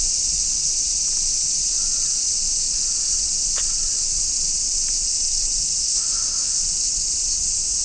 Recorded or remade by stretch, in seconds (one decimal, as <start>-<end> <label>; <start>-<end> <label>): 0.0-5.8 recorded; 5.8-6.6 remade; 6.6-7.8 recorded